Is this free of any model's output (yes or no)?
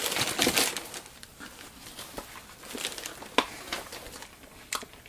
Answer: yes